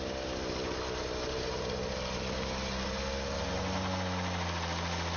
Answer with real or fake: real